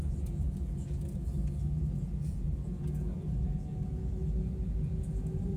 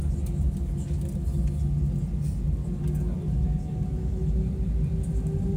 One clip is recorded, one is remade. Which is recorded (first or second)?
second